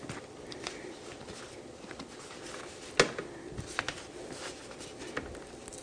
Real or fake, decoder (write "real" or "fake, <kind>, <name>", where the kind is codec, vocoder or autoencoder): real